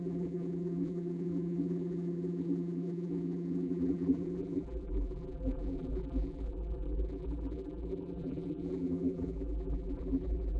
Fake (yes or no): yes